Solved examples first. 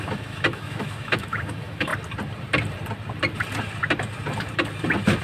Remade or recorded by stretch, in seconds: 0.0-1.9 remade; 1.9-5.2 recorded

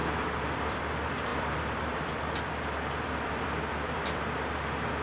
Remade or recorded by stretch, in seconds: 0.0-0.8 remade; 0.8-1.3 recorded; 1.3-4.3 remade; 4.3-5.0 recorded

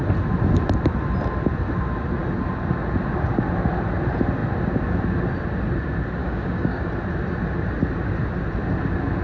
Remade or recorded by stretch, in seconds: 0.0-6.2 recorded; 6.2-6.9 remade; 6.9-9.2 recorded

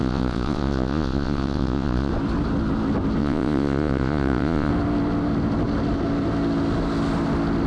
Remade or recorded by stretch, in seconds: 0.0-2.1 remade; 2.1-3.2 recorded; 3.2-4.7 remade; 4.7-7.7 recorded

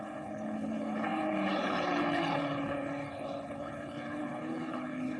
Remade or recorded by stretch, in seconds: 0.0-5.2 remade

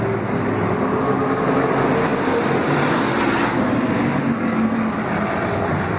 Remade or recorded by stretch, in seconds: 0.0-6.0 recorded